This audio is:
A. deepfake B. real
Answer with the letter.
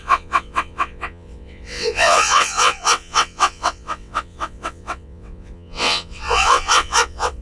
A